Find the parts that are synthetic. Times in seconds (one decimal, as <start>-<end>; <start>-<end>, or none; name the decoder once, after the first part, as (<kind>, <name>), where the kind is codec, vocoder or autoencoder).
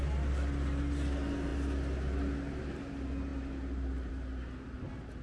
none